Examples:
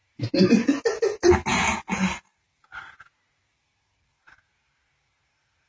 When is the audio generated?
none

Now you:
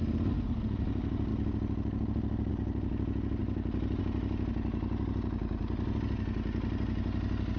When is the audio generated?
none

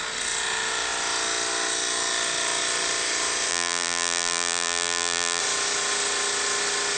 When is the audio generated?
3.5-5.4 (vocoder, BigVGAN v2)

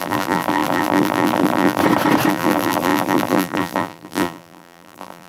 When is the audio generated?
0.0-1.8 (vocoder, BigVGAN v2); 2.3-5.3

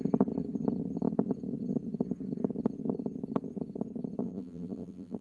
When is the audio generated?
4.2-5.2 (vocoder, BigVGAN v2)

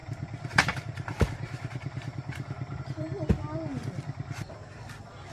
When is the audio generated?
0.0-2.8 (vocoder, BigVGAN v2)